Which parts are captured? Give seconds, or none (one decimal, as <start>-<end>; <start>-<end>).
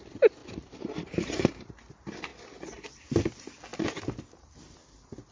0.0-0.4; 1.7-5.3